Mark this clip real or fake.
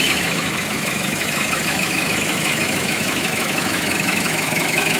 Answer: fake